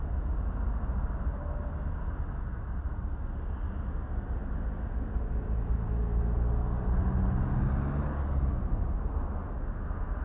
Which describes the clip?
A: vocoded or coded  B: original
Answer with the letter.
B